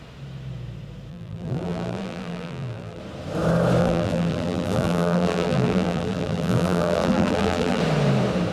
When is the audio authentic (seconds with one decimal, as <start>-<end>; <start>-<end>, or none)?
0.0-1.1; 3.0-3.8; 7.8-8.5